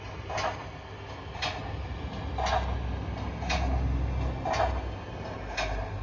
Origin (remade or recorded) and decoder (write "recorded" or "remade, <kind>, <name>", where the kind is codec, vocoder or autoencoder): recorded